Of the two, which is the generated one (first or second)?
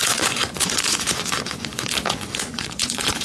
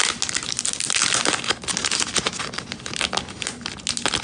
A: first